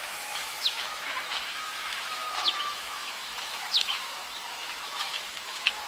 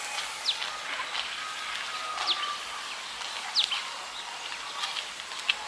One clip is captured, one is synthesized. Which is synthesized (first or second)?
first